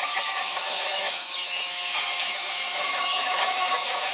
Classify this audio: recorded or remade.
remade